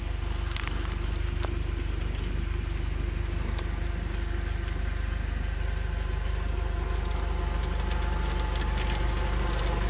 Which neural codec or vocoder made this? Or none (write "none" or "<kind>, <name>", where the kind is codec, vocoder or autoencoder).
none